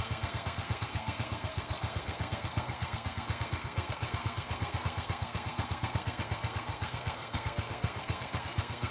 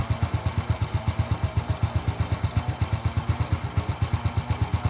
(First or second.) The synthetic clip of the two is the first